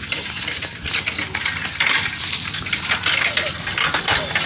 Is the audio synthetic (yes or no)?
no